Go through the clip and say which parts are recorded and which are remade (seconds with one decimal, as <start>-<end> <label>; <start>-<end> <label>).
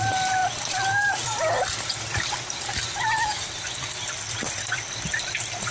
0.0-5.7 remade